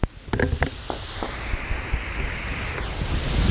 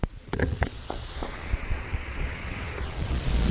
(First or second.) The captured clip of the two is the first